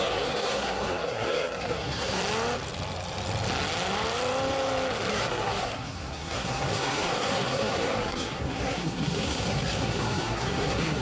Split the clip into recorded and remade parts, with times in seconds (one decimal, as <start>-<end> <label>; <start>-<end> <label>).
0.0-2.2 remade; 2.2-5.1 recorded; 5.1-11.0 remade